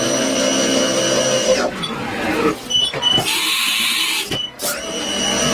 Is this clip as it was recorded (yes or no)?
yes